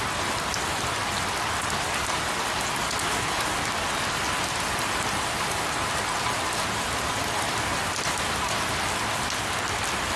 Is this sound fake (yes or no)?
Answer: no